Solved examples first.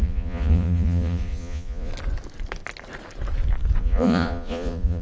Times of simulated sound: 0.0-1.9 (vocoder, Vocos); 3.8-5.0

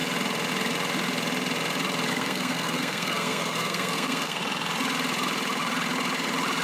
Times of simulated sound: 2.1-4.4 (codec, SNAC)

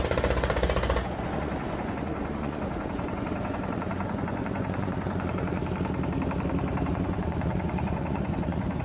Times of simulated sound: 0.0-5.6 (vocoder, Vocos); 6.9-8.8

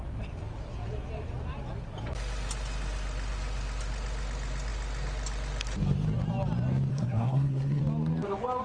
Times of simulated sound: 6.9-7.8 (codec, SNAC)

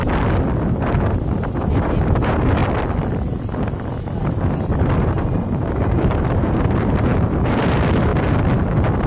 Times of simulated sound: 1.0-2.6 (vocoder, BigVGAN v2); 4.0-8.1

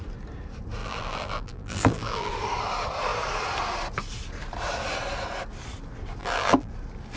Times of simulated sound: 0.8-2.3 (vocoder, BigVGAN v2); 6.2-6.7